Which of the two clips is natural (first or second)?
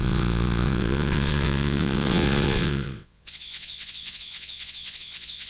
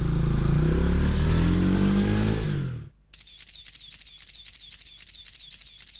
second